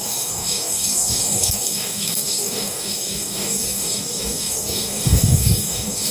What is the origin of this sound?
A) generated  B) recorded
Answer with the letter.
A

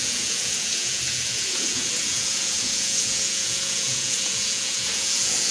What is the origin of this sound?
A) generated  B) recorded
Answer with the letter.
A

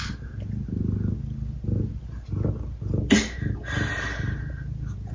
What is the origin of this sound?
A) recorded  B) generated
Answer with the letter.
A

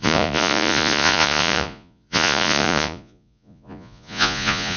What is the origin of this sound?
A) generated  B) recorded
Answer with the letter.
A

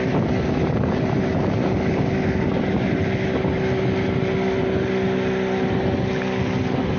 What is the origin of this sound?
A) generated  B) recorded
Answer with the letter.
B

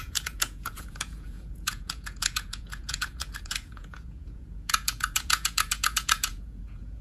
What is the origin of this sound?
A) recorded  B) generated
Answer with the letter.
B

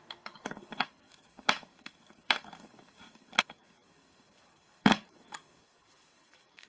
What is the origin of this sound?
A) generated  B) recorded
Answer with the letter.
A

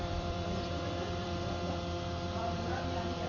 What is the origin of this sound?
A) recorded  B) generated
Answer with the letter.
B